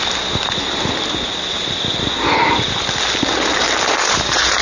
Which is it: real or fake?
real